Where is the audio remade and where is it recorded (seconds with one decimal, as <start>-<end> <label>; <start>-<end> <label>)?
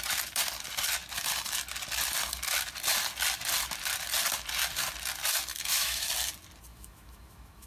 0.0-5.5 recorded; 5.5-6.1 remade; 6.1-6.7 recorded; 6.7-7.7 remade